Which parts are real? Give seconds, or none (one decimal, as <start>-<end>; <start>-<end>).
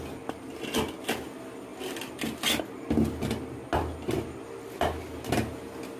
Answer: 0.0-6.0